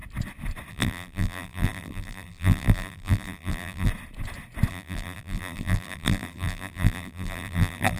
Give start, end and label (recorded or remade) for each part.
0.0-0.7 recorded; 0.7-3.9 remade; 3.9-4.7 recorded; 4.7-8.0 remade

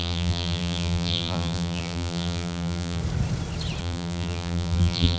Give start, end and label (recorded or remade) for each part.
0.0-3.0 remade; 3.0-3.8 recorded; 3.8-5.2 remade

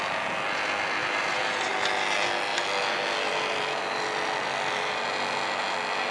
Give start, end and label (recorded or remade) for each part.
0.0-1.0 recorded; 1.0-1.7 remade; 1.7-2.5 recorded; 2.5-5.0 remade; 5.0-6.1 recorded

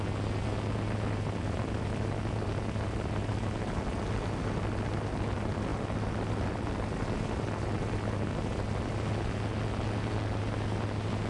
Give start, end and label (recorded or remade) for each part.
0.0-11.3 recorded

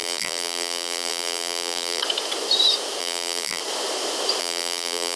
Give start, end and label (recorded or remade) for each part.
0.0-2.0 remade; 2.0-3.0 recorded; 3.0-3.6 remade; 3.6-4.4 recorded; 4.4-5.2 remade

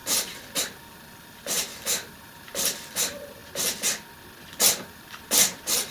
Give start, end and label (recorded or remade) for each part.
0.0-3.4 remade; 3.4-4.7 recorded; 4.7-5.9 remade

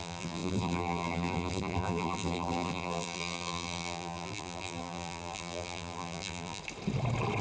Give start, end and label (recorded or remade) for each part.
0.0-6.6 remade; 6.6-7.4 recorded

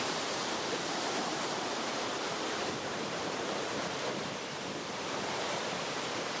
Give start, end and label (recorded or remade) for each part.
0.0-1.9 remade; 1.9-2.6 recorded; 2.6-6.4 remade